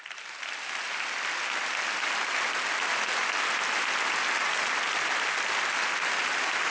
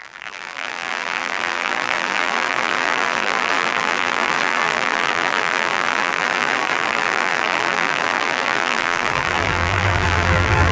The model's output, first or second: second